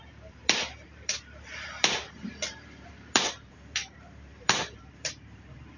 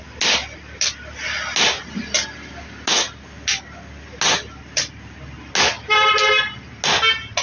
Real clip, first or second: second